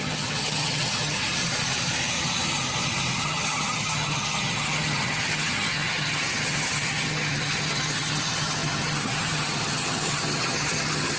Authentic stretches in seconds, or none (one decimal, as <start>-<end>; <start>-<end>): 1.2-3.2